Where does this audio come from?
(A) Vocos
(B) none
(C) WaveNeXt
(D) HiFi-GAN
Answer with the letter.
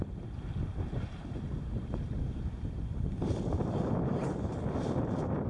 B